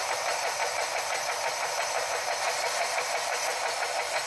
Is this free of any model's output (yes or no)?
no